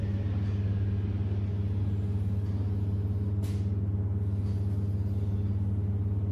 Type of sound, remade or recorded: recorded